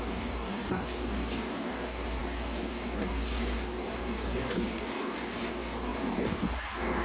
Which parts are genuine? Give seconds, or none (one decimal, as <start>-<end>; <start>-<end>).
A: none